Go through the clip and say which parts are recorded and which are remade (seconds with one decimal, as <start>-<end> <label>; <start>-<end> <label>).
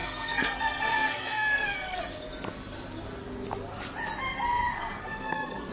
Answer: 0.0-2.0 remade; 2.0-4.2 recorded; 4.2-5.7 remade